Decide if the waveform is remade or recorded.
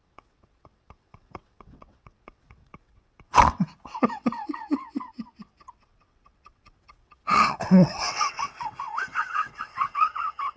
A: remade